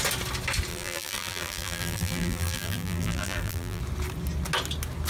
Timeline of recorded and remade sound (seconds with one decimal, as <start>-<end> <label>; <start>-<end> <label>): 0.0-0.7 recorded; 0.7-3.8 remade; 3.8-5.1 recorded

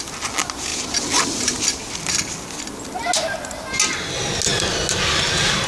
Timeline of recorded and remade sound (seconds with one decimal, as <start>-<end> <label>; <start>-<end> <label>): 0.0-5.7 recorded

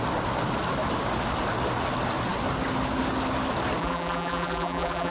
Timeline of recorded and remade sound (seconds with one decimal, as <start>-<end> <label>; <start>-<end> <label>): 0.0-3.8 recorded; 3.8-5.1 remade